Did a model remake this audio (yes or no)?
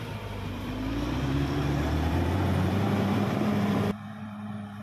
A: yes